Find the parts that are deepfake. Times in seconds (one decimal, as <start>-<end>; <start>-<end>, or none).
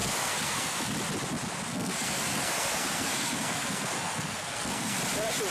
0.0-0.9; 1.7-5.0